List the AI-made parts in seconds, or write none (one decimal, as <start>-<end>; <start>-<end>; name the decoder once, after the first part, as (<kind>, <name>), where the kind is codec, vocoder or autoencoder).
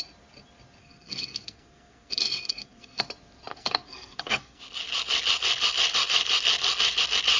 0.8-3.0 (codec, SNAC); 3.5-4.6